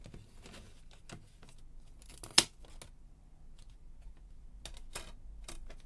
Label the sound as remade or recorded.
recorded